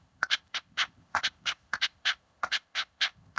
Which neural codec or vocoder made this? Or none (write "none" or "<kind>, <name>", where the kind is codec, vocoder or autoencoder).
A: codec, ZipCodec